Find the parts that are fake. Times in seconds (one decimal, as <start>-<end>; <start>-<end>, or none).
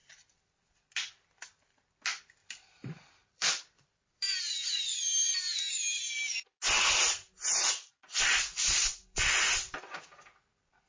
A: 2.4-5.6; 8.8-10.2